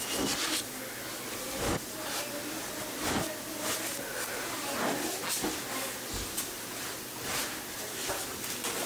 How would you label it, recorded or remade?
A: recorded